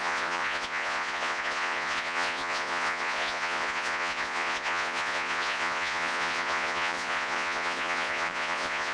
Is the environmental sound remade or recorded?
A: remade